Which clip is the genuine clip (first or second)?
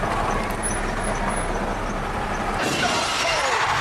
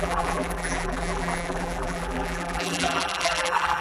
first